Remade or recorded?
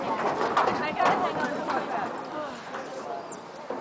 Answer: recorded